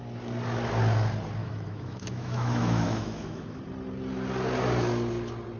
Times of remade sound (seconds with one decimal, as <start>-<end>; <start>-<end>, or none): 1.4-3.6